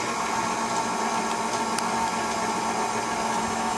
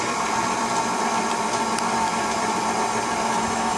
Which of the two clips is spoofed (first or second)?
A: second